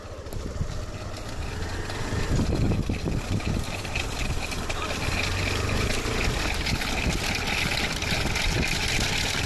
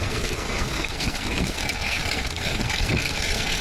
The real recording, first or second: first